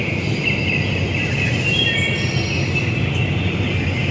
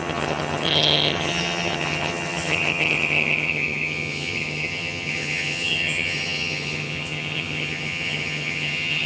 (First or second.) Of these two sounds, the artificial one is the second